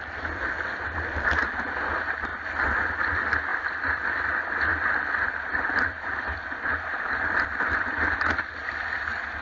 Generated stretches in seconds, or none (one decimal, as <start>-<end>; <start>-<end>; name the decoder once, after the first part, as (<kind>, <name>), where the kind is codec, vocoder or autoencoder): 3.5-8.3 (vocoder, BigVGAN v2)